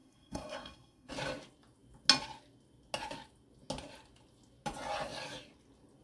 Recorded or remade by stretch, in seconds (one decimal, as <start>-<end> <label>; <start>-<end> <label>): 0.0-1.1 remade; 1.1-6.0 recorded